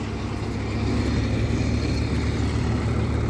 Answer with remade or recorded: recorded